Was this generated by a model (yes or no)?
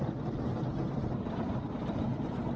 no